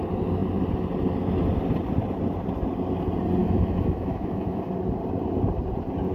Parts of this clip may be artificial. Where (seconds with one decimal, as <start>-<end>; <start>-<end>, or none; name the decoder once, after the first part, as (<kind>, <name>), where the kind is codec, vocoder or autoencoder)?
3.4-4.7 (autoencoder, DAC-VAE)